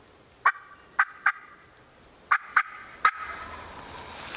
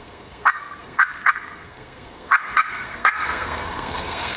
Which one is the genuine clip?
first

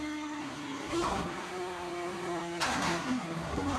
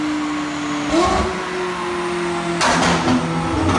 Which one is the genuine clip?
second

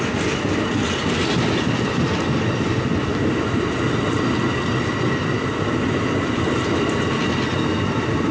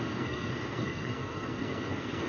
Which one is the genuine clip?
first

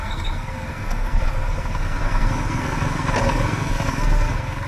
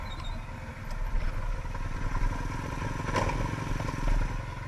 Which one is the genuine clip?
second